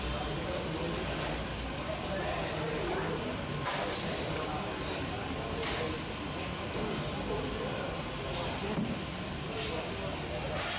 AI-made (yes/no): no